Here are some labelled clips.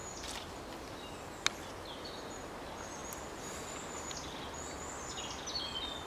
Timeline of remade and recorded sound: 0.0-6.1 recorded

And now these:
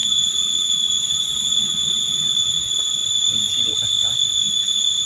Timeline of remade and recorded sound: 0.0-3.0 remade; 3.0-5.1 recorded

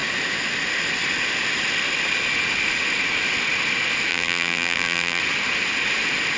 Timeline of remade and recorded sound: 0.0-4.1 recorded; 4.1-5.2 remade; 5.2-6.4 recorded

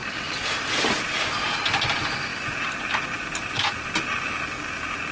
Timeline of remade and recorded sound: 0.0-1.7 remade; 1.7-5.1 recorded

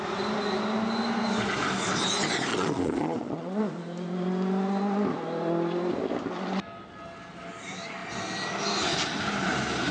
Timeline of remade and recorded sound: 0.0-2.5 recorded; 2.5-3.6 remade; 3.6-9.9 recorded

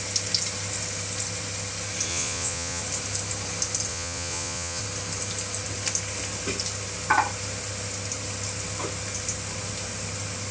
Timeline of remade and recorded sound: 0.0-2.1 recorded; 2.1-2.8 remade; 2.8-3.9 recorded; 3.9-4.8 remade; 4.8-10.5 recorded